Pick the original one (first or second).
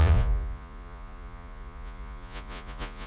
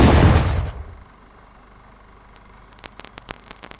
second